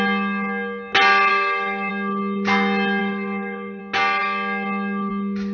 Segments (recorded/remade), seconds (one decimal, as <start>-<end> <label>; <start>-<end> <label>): 0.0-1.3 recorded; 1.3-1.9 remade; 1.9-3.0 recorded; 3.0-3.8 remade; 3.8-5.5 recorded

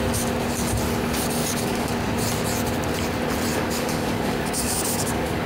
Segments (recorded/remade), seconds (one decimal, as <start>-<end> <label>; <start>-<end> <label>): 0.0-1.4 recorded; 1.4-1.9 remade; 1.9-3.5 recorded; 3.5-5.5 remade

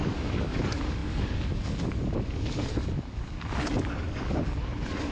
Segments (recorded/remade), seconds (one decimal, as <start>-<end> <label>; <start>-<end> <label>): 0.0-5.1 remade

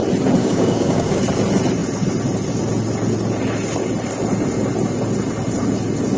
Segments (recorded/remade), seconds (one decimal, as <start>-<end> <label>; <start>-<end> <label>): 0.0-0.4 recorded; 0.4-1.2 remade; 1.2-6.2 recorded